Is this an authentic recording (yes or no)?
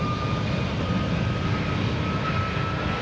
yes